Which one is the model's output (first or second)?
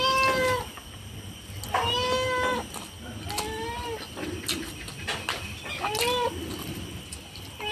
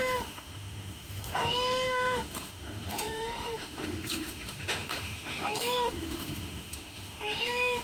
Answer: second